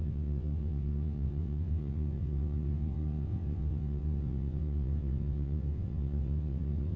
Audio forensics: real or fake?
fake